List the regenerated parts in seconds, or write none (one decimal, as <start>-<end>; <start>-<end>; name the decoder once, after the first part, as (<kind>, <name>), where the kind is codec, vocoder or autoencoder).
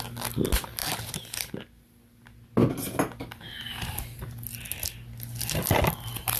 none